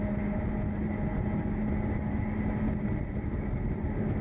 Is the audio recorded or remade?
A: recorded